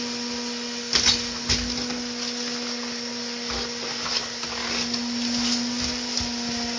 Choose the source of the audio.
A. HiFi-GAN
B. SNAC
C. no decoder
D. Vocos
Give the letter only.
C